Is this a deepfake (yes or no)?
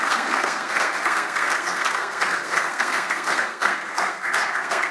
yes